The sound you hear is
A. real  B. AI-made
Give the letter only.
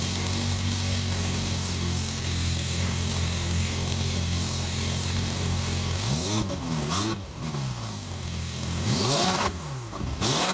B